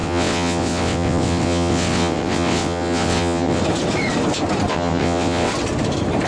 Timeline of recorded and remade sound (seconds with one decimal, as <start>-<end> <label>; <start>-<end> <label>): 0.0-3.6 remade; 3.6-4.7 recorded; 4.7-5.5 remade; 5.5-6.3 recorded